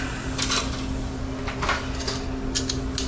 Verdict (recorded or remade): recorded